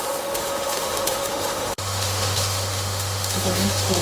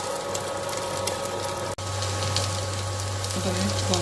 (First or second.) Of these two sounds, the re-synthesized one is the first